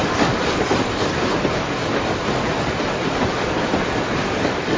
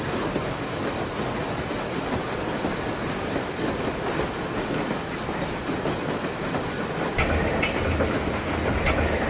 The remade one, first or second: first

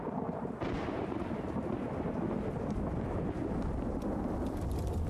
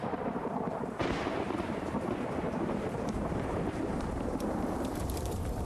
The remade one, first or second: second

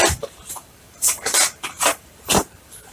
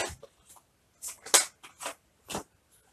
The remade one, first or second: first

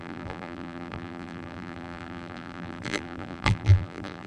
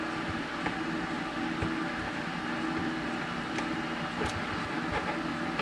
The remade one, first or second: first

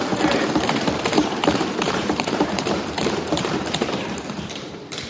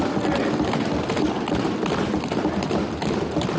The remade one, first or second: first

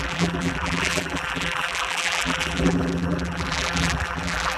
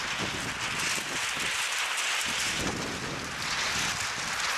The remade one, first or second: first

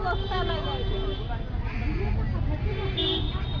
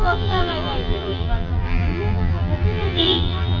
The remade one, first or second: second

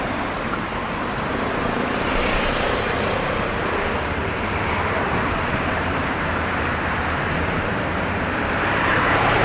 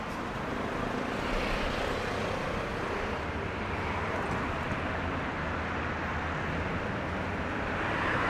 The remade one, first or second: first